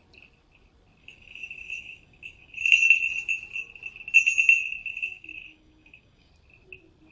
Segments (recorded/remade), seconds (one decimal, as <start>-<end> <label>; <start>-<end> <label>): 0.0-1.0 recorded; 1.0-2.8 remade; 2.8-4.8 recorded; 4.8-6.3 remade; 6.3-7.1 recorded